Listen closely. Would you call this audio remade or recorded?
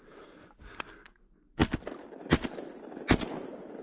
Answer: recorded